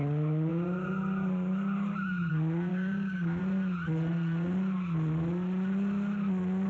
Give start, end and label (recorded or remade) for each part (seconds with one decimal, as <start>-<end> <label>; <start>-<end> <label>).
0.0-2.7 recorded; 2.7-3.4 remade; 3.4-6.7 recorded